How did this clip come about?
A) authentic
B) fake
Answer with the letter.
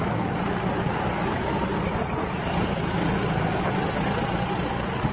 A